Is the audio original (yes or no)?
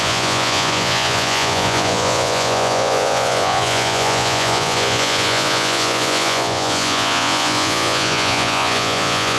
no